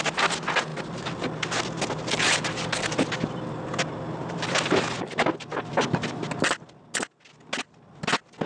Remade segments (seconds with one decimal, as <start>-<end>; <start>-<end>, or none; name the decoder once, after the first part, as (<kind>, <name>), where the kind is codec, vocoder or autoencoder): none